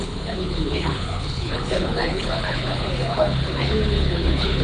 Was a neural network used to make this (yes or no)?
yes